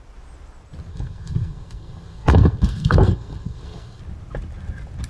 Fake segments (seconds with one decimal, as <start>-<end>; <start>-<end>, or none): 0.9-4.0